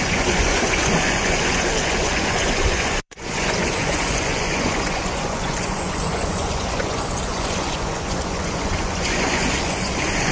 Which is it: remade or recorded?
remade